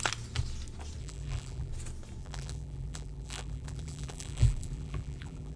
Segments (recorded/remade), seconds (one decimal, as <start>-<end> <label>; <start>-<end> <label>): 0.0-1.0 recorded; 1.0-1.7 remade; 1.7-2.2 recorded; 2.2-5.6 remade